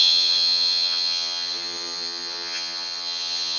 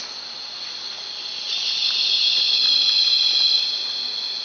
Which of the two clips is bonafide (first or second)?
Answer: second